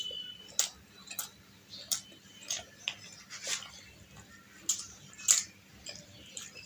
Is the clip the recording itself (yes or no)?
yes